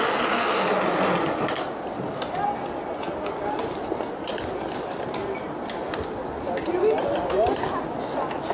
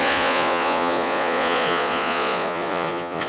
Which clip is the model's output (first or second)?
second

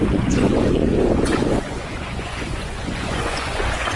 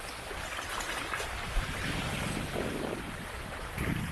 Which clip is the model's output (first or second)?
first